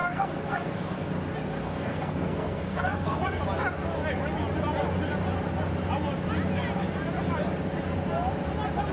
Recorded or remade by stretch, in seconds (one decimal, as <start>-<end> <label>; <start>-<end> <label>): 0.0-1.1 remade; 1.1-1.6 recorded; 1.6-3.4 remade; 3.4-8.9 recorded